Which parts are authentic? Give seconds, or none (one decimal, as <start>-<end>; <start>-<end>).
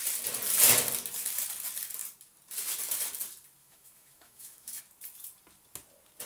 0.0-3.6; 4.8-6.3